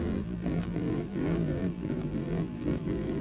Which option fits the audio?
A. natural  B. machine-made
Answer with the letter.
B